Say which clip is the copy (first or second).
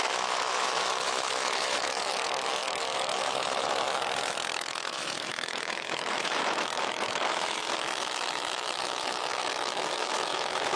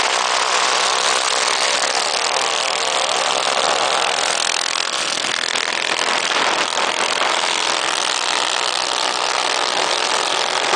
first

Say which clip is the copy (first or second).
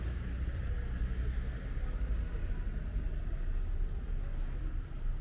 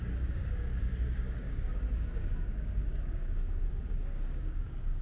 second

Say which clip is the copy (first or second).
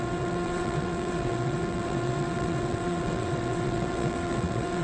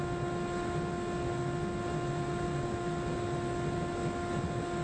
first